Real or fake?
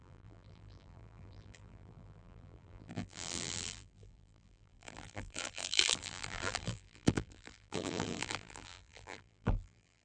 fake